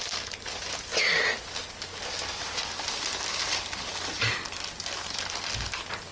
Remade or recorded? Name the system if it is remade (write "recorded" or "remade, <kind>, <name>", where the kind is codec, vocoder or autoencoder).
recorded